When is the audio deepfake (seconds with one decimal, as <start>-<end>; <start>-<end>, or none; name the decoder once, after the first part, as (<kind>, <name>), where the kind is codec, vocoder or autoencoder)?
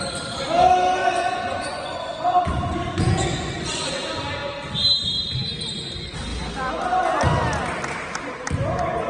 1.0-3.9 (vocoder, Vocos)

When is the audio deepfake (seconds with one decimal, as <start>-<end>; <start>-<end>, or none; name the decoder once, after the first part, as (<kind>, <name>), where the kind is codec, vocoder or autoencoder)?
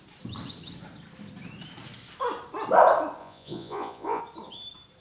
3.2-4.2 (vocoder, Vocos)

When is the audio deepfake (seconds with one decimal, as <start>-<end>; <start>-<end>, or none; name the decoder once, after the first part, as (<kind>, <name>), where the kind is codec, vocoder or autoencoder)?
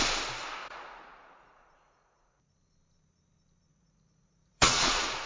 0.6-2.5 (vocoder, Vocos); 3.7-5.3